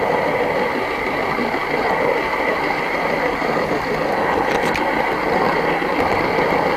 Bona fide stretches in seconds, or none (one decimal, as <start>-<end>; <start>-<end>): 0.0-1.6; 3.9-6.8